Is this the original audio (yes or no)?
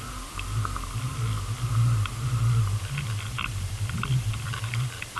yes